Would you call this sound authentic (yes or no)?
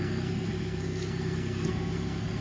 no